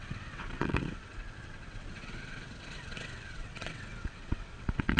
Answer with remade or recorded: remade